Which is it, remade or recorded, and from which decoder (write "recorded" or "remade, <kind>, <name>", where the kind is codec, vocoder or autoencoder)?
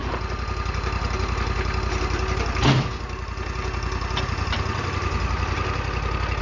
recorded